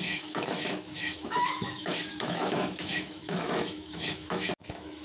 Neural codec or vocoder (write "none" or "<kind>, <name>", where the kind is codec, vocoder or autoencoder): autoencoder, DAC-VAE